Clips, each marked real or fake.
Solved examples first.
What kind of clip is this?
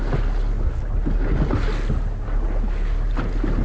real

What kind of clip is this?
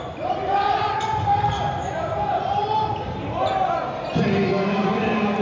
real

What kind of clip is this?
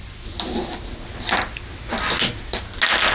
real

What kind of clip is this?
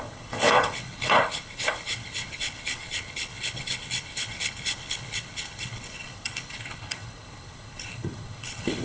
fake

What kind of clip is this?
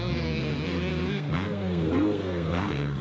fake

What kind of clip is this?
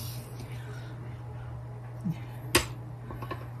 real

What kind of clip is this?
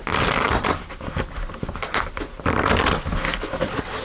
fake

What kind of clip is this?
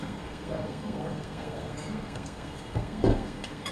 fake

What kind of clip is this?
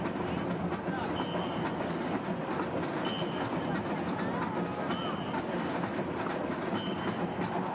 real